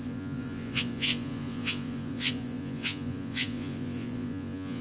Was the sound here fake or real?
fake